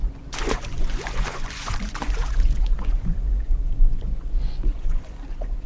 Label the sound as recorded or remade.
remade